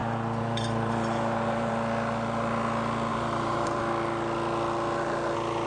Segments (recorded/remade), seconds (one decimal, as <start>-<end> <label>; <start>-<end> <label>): 0.0-1.7 remade; 1.7-3.1 recorded; 3.1-3.8 remade; 3.8-5.7 recorded